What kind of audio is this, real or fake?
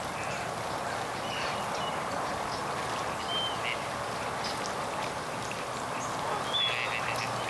real